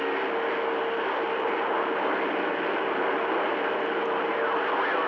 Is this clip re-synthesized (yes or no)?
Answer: no